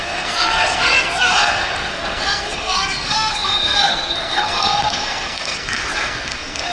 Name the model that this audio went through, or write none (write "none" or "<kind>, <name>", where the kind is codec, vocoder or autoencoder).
codec, SNAC